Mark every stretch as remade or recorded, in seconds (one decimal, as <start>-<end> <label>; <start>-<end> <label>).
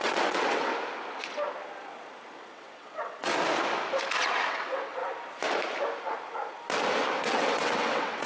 0.0-0.7 remade; 0.7-2.4 recorded; 2.4-3.3 remade; 3.3-4.5 recorded; 4.5-5.0 remade; 5.0-7.2 recorded; 7.2-8.3 remade